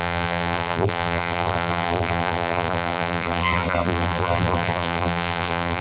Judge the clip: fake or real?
fake